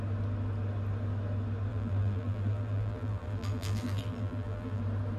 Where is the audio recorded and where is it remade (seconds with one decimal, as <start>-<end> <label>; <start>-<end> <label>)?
0.0-1.7 recorded; 1.7-4.8 remade; 4.8-5.2 recorded